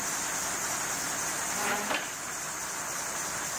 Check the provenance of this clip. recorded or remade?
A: recorded